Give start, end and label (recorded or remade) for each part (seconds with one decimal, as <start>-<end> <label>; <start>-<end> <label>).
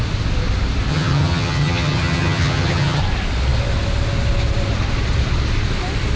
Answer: 0.0-0.9 recorded; 0.9-3.0 remade; 3.0-6.2 recorded